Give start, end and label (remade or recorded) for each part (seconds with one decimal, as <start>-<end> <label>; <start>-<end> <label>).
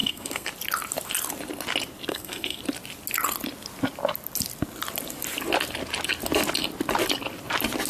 0.0-0.5 remade; 0.5-2.1 recorded; 2.1-2.6 remade; 2.6-7.9 recorded